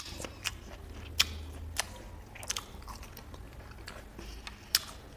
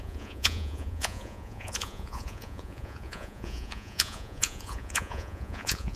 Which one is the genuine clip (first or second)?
first